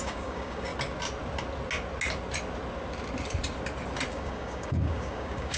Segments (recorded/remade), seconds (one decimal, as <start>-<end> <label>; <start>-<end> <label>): 0.0-0.7 remade; 0.7-4.1 recorded; 4.1-5.6 remade